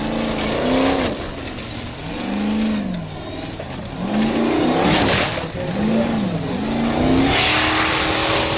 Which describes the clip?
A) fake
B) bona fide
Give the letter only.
B